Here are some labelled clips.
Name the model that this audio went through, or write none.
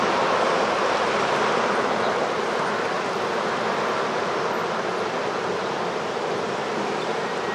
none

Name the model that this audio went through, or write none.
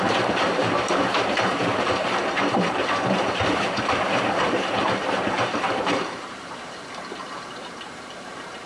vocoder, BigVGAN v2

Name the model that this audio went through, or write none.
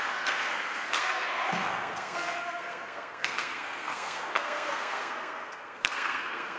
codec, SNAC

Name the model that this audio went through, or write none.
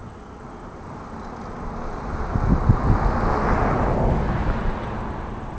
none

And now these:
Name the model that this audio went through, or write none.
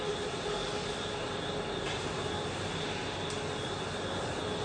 none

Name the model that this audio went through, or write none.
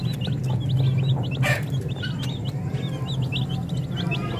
none